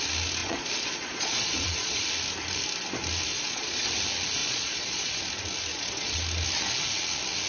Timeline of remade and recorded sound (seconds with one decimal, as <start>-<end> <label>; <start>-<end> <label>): 0.0-0.4 recorded; 0.4-2.0 remade; 2.0-3.3 recorded; 3.3-3.9 remade; 3.9-4.4 recorded; 4.4-5.2 remade; 5.2-5.7 recorded; 5.7-6.2 remade; 6.2-7.5 recorded